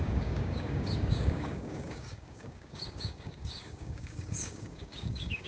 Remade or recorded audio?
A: remade